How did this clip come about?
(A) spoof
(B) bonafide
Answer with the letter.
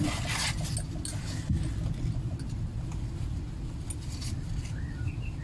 B